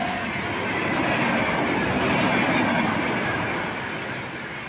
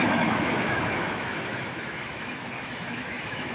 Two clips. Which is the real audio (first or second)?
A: first